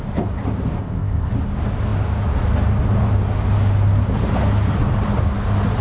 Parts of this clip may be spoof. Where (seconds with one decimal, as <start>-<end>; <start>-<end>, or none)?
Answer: 0.8-1.3